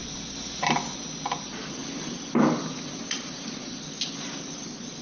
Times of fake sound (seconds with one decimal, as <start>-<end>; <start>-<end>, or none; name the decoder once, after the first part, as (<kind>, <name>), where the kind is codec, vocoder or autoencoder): none